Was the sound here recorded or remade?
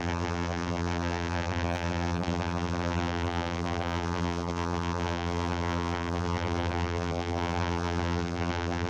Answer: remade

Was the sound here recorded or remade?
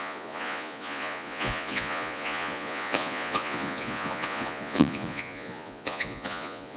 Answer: remade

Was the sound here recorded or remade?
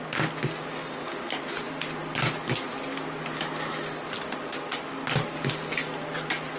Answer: recorded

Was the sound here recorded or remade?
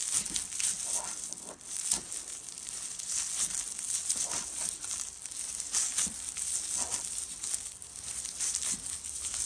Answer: recorded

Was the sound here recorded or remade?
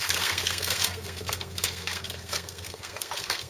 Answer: remade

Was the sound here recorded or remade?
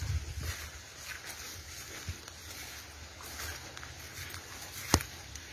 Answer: recorded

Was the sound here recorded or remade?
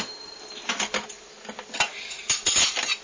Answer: recorded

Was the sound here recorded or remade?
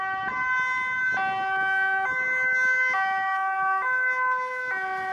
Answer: recorded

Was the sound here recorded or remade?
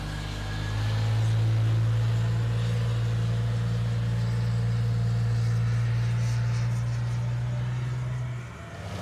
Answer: recorded